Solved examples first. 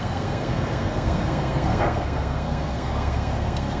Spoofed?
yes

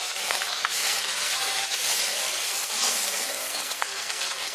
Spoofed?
yes